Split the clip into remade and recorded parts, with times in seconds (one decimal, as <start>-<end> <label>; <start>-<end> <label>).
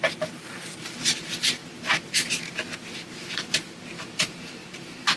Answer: 0.0-1.6 remade; 1.6-3.1 recorded; 3.1-5.2 remade